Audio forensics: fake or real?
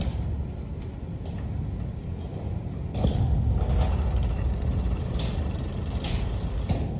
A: real